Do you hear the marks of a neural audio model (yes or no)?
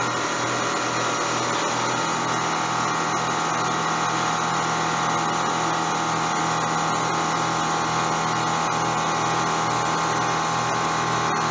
no